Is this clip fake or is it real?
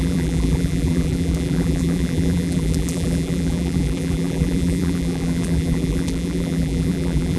fake